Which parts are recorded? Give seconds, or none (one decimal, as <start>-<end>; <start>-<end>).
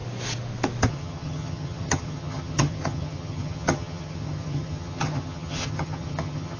0.0-0.9